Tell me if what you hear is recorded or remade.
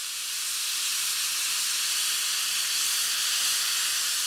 recorded